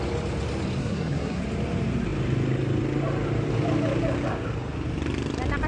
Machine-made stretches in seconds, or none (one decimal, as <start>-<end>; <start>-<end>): 0.8-1.4

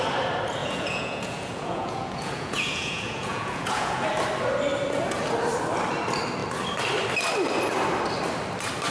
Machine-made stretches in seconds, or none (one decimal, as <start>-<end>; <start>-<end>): 0.6-4.0

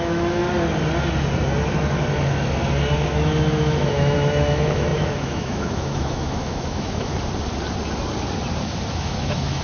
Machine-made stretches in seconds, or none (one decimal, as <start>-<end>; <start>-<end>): 0.0-0.4; 3.1-7.1; 8.9-9.6

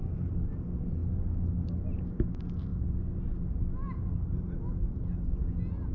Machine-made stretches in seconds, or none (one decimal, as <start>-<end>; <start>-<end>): none

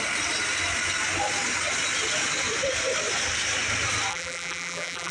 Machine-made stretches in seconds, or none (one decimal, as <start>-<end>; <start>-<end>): 4.1-5.1

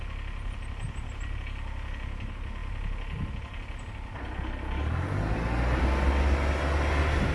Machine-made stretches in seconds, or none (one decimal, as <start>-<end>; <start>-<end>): none